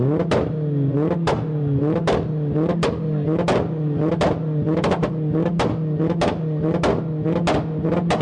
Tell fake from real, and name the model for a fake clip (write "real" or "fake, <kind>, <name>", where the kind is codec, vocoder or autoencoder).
real